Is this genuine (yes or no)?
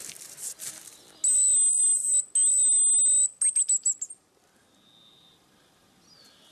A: yes